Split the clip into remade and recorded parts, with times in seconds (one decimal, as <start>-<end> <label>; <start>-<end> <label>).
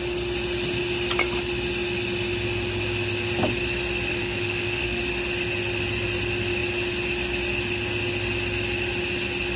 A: 0.0-4.1 recorded; 4.1-5.0 remade; 5.0-9.6 recorded